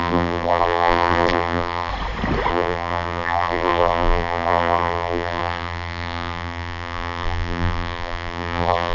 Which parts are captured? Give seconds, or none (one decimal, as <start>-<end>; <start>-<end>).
1.9-2.5